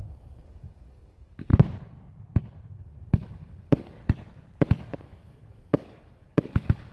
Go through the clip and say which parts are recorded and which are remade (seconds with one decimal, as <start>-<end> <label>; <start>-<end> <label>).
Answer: 0.0-1.5 remade; 1.5-2.7 recorded; 2.7-4.0 remade; 4.0-5.0 recorded; 5.0-6.9 remade